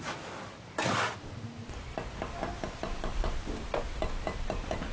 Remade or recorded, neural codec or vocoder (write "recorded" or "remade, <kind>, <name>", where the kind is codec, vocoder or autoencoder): recorded